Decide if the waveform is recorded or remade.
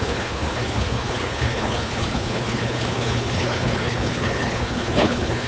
remade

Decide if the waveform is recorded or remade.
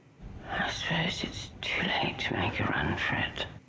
recorded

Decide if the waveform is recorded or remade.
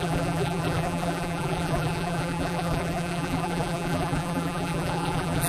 remade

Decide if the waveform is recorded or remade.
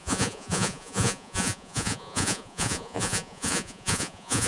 remade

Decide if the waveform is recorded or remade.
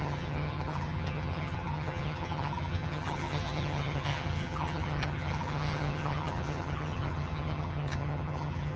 remade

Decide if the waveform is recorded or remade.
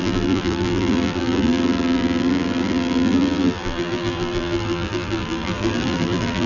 remade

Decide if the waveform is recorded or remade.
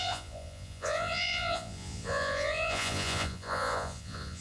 remade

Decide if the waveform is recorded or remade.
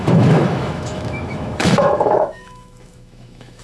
remade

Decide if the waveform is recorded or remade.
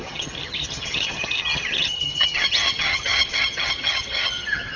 remade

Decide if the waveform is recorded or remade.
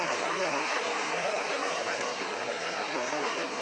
remade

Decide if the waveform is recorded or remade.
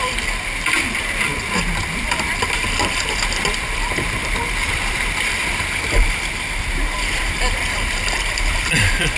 remade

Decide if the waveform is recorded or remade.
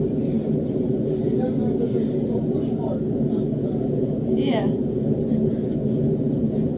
recorded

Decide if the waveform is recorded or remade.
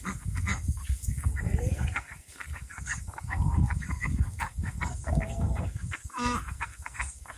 remade